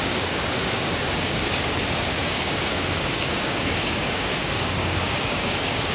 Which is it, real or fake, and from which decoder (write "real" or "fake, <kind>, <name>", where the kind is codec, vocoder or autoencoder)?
fake, codec, DAC